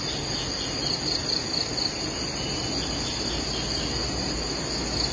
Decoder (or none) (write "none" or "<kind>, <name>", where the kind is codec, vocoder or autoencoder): none